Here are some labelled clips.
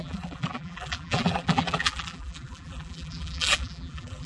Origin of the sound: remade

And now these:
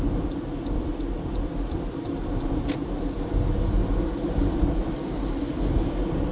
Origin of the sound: recorded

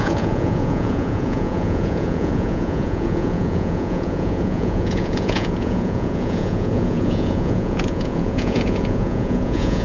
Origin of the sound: remade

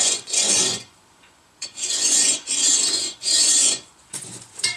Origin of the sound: remade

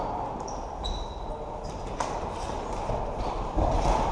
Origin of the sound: recorded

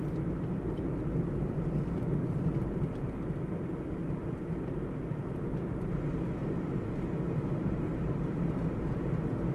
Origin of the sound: recorded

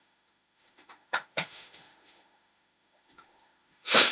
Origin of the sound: remade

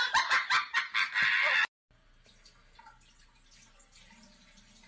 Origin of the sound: recorded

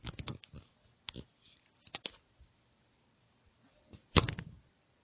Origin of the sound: recorded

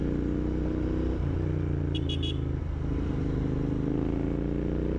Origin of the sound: recorded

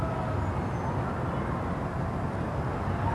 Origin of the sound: recorded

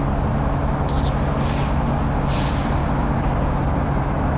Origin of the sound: recorded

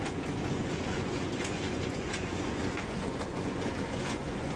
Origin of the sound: remade